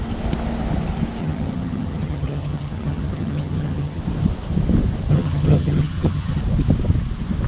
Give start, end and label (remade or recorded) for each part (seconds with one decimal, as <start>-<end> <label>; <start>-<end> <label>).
0.0-1.2 recorded; 1.2-4.0 remade; 4.0-5.1 recorded; 5.1-6.4 remade; 6.4-7.5 recorded